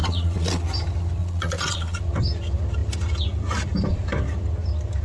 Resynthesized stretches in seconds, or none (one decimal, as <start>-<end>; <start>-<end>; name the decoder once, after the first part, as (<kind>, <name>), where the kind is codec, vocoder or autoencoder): 0.0-0.6 (vocoder, Vocos); 1.2-2.0